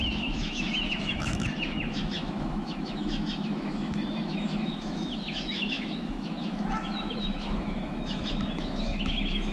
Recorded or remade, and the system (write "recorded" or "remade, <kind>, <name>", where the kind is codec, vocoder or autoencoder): remade, autoencoder, DAC-VAE